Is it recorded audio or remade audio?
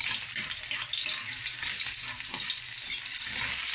recorded